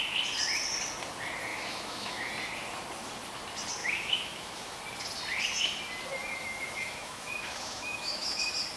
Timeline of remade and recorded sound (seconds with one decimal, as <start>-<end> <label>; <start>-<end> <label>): 0.0-1.5 recorded; 1.5-2.3 remade; 2.3-3.8 recorded; 3.8-4.8 remade; 4.8-6.2 recorded; 6.2-8.4 remade; 8.4-8.8 recorded